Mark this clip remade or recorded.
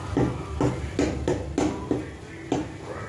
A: recorded